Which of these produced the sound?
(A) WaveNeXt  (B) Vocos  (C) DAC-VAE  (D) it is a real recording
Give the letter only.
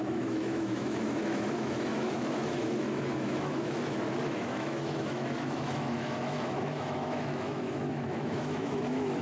C